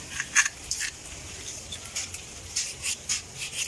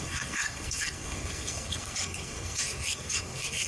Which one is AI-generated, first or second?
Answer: second